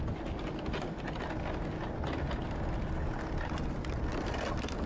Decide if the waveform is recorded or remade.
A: recorded